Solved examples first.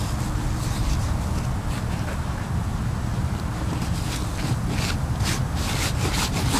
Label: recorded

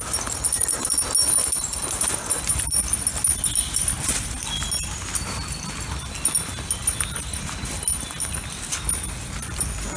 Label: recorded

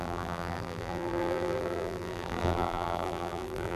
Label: remade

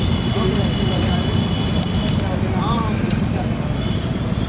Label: recorded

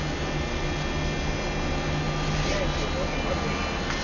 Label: recorded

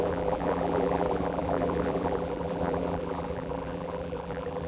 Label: remade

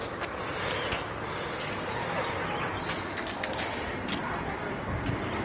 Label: recorded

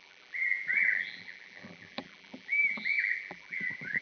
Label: remade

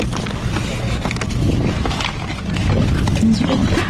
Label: recorded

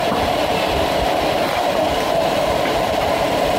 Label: remade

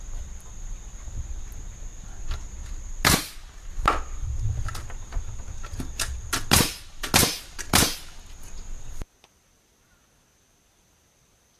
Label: recorded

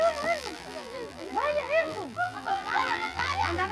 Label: remade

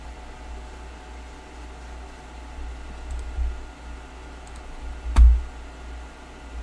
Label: recorded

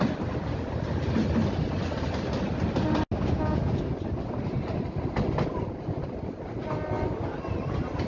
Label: recorded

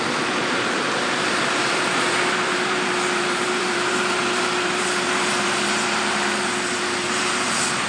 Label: remade